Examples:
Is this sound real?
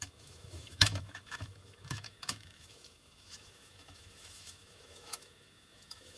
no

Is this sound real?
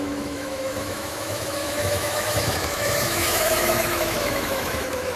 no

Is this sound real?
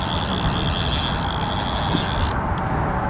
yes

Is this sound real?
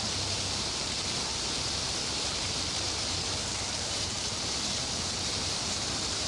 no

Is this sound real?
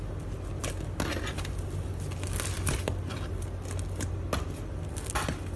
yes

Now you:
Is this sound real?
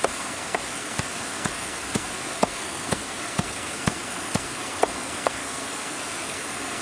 no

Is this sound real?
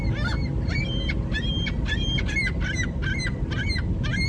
yes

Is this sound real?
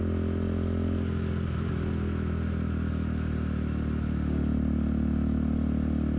yes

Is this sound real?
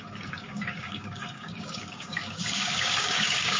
no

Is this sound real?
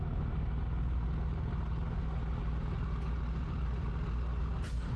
yes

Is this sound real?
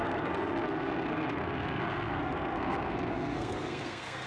no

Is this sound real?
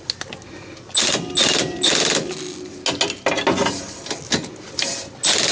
yes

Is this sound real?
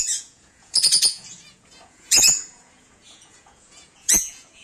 no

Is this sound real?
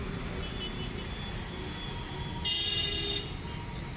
yes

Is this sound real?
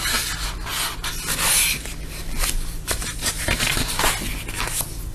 yes